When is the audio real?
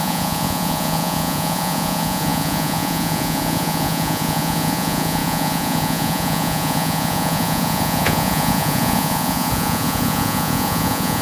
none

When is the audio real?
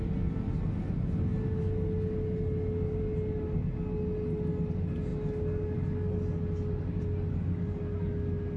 0.0-8.6